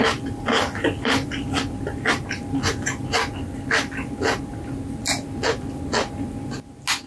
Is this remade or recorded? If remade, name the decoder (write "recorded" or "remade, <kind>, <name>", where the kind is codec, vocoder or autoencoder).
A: recorded